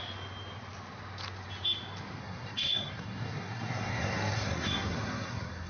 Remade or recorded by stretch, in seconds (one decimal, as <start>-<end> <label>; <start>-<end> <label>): 0.0-2.2 recorded; 2.2-5.7 remade